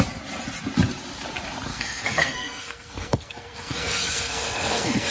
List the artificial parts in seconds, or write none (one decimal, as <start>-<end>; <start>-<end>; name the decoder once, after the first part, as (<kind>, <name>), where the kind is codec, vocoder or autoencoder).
1.7-5.1 (codec, SNAC)